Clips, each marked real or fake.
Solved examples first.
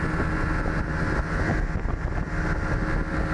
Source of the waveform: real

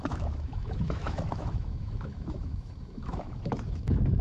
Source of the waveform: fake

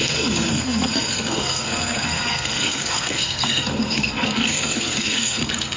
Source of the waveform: fake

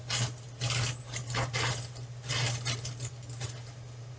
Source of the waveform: real